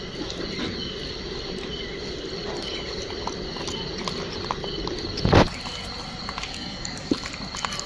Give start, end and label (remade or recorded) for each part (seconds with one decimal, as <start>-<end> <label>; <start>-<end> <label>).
0.0-6.5 recorded; 6.5-7.1 remade; 7.1-7.9 recorded